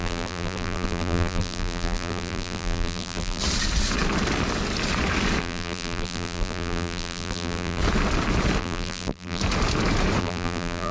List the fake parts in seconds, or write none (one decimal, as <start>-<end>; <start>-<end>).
0.0-3.4; 5.4-7.8; 8.6-9.4; 10.2-10.9